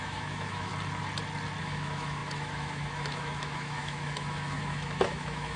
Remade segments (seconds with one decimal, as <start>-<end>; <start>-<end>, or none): 0.0-0.7; 1.6-5.6

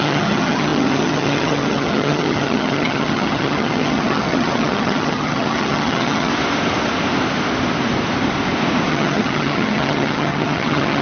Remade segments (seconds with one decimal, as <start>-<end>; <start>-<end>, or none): 0.0-6.3; 8.9-11.0

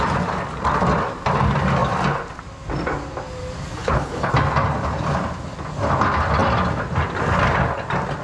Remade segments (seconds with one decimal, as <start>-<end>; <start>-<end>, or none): 3.8-4.3

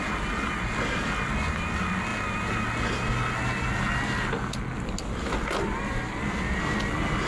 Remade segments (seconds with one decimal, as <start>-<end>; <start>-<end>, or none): none

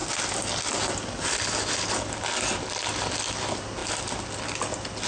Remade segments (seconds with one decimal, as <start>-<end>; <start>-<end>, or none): none

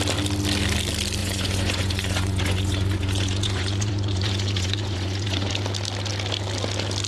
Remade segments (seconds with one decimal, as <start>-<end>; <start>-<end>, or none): 1.2-5.5

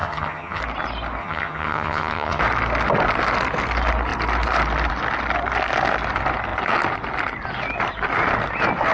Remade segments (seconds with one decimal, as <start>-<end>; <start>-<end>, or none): 0.0-0.6; 1.2-2.4